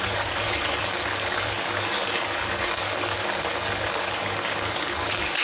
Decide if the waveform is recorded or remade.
remade